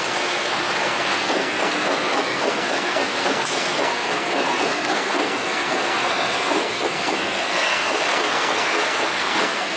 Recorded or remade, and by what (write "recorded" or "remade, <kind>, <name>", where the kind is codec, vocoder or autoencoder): remade, codec, SNAC